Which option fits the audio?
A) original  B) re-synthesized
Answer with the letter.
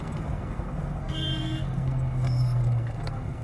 B